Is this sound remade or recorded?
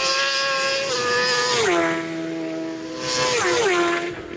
recorded